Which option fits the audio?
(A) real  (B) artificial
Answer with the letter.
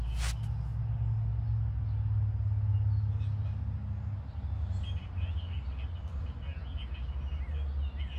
A